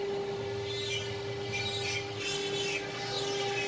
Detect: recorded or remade recorded